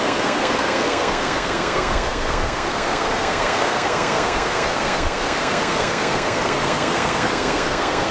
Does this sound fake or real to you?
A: fake